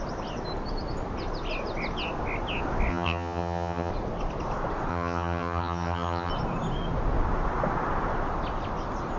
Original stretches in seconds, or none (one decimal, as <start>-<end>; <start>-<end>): 0.0-2.9; 3.9-4.9; 6.3-9.2